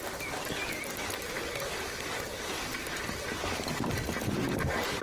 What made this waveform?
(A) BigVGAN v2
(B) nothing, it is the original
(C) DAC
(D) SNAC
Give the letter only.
B